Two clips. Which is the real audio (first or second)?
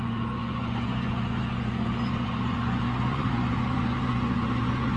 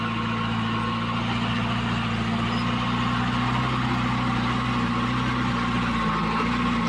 second